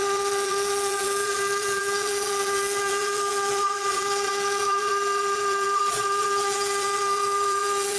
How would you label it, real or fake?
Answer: fake